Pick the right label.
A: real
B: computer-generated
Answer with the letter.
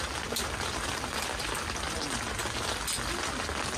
A